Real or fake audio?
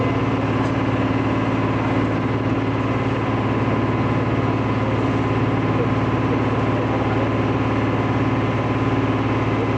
real